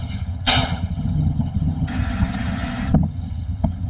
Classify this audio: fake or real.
fake